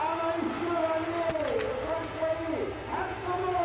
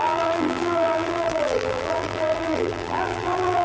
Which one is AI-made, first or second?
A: second